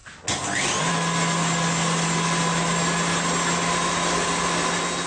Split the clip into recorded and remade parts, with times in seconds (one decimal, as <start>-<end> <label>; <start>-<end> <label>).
0.0-5.1 recorded